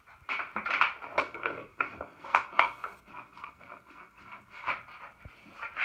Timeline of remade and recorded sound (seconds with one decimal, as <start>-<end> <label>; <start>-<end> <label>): 0.0-1.2 recorded; 1.2-4.7 remade; 4.7-5.8 recorded